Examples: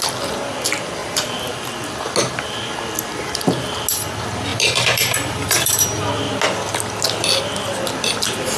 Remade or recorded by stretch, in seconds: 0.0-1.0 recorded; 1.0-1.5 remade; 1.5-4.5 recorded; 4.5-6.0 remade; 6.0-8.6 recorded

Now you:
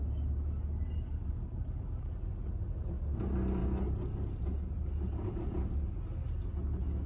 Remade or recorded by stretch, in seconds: 0.0-7.1 recorded

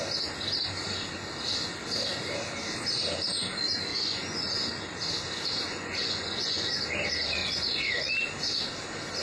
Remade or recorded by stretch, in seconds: 0.0-3.9 recorded; 3.9-4.7 remade; 4.7-5.7 recorded; 5.7-6.7 remade; 6.7-7.4 recorded; 7.4-8.1 remade; 8.1-9.2 recorded

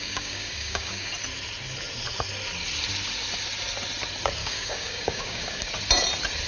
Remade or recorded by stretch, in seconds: 0.0-1.1 remade; 1.1-4.4 recorded; 4.4-5.7 remade; 5.7-6.5 recorded

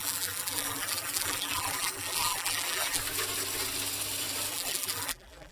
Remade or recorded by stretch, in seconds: 0.0-3.0 remade; 3.0-4.5 recorded; 4.5-5.5 remade

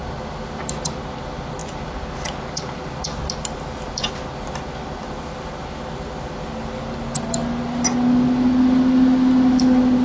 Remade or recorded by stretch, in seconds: 0.0-10.0 recorded

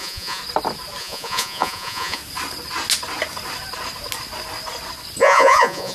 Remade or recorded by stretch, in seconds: 0.0-0.4 remade; 0.4-1.0 recorded; 1.0-2.2 remade; 2.2-5.2 recorded; 5.2-5.9 remade

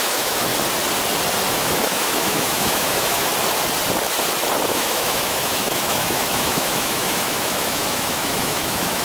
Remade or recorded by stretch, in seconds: 0.0-0.5 remade; 0.5-1.5 recorded; 1.5-3.3 remade; 3.3-4.7 recorded; 4.7-9.0 remade